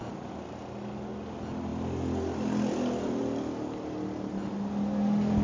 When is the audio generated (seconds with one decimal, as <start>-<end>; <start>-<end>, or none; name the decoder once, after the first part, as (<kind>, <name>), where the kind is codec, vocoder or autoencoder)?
none